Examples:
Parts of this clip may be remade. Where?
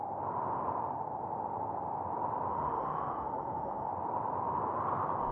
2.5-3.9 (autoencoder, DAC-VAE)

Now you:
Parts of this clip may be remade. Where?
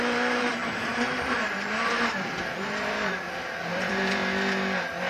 0.0-4.2 (vocoder, BigVGAN v2)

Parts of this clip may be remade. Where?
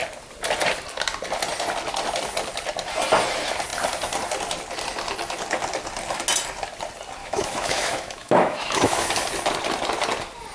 7.2-9.1 (autoencoder, DAC-VAE)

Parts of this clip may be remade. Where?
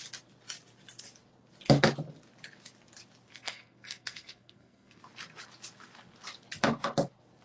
3.3-5.0 (codec, SNAC)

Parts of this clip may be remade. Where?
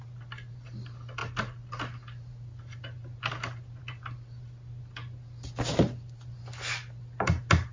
none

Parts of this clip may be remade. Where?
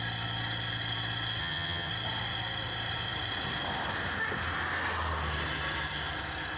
1.4-1.9 (vocoder, HiFi-GAN)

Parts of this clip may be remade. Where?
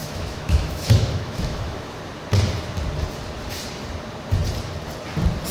0.0-2.0 (autoencoder, DAC-VAE)